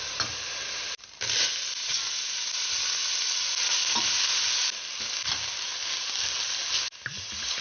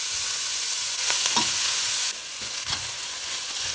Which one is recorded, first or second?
first